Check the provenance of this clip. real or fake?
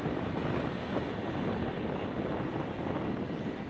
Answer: real